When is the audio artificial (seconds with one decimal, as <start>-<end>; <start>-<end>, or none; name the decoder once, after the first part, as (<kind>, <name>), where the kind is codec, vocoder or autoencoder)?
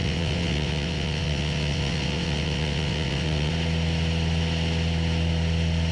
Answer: 0.0-3.5 (vocoder, WaveNeXt)